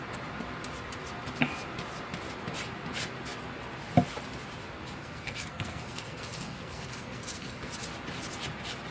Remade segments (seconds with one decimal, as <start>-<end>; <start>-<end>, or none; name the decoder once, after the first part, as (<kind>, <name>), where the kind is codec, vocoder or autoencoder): 5.0-7.7 (codec, SNAC)

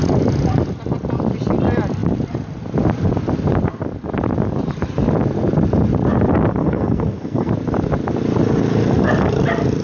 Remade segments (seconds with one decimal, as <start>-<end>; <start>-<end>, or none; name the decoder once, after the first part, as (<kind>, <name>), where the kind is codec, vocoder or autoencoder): 6.6-7.5 (codec, SNAC)

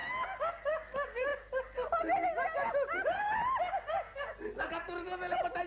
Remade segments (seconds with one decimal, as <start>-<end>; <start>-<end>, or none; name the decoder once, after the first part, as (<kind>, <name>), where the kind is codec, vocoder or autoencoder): none

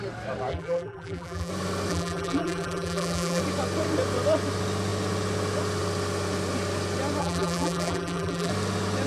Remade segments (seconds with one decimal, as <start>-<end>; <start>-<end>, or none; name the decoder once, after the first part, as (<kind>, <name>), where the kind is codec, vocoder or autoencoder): 0.5-1.5 (vocoder, BigVGAN v2); 1.9-3.4; 7.2-8.5

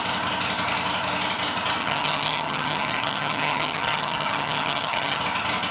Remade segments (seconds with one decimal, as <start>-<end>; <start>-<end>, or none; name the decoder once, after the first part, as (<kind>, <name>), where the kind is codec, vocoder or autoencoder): 1.8-5.2 (vocoder, HiFi-GAN)

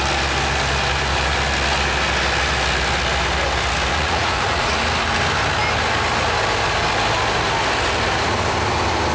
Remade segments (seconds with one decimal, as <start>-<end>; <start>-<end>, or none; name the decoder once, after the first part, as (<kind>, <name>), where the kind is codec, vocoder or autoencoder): 3.9-4.8 (vocoder, Vocos)

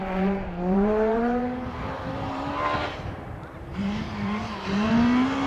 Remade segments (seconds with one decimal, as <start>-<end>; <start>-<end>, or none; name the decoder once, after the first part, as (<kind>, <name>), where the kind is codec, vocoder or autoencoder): 0.0-2.5 (vocoder, BigVGAN v2); 3.7-4.9

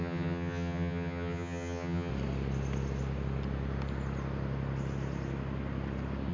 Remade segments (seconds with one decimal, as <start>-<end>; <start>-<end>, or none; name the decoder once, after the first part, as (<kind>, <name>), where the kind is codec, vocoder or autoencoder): 0.0-2.1 (vocoder, HiFi-GAN)